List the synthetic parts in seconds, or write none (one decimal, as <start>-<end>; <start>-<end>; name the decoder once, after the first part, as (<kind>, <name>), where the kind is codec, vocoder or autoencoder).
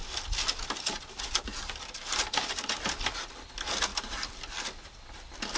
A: none